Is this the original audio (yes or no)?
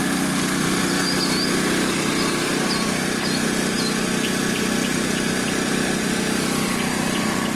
yes